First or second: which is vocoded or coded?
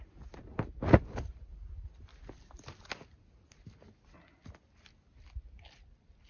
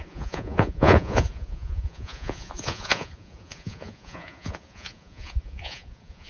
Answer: second